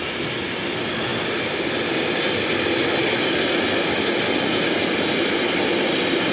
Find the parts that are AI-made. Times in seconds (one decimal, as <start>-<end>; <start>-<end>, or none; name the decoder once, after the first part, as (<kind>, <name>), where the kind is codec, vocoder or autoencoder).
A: none